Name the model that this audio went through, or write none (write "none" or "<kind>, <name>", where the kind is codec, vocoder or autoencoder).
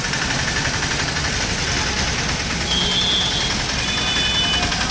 none